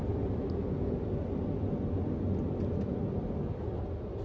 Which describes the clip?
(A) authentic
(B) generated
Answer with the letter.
A